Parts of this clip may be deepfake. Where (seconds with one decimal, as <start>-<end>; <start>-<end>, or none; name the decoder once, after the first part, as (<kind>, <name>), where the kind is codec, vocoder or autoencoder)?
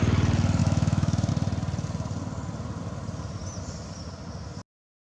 0.6-1.3 (autoencoder, DAC-VAE)